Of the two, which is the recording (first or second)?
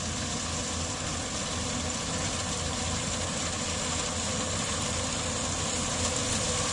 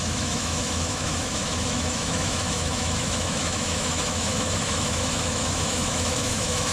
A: first